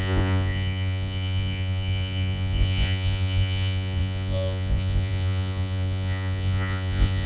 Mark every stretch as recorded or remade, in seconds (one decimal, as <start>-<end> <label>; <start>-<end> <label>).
0.0-7.3 remade